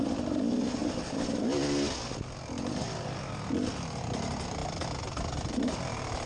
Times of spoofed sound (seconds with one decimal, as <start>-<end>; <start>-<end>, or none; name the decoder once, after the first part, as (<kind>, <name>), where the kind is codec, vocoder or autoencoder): none